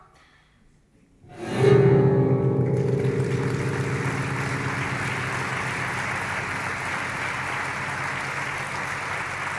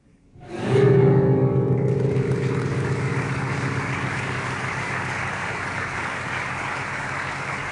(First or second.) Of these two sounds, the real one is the first